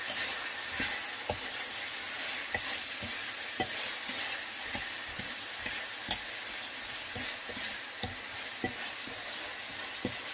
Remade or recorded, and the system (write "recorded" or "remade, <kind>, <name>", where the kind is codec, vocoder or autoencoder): recorded